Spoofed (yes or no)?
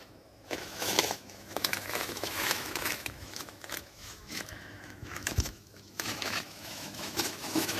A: yes